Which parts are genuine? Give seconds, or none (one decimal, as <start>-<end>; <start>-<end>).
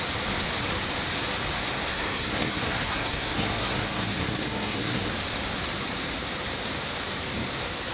0.0-1.9; 5.1-7.9